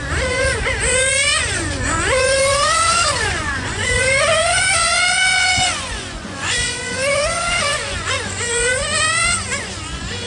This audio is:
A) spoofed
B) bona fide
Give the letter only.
A